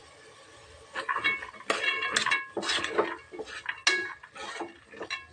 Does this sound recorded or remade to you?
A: recorded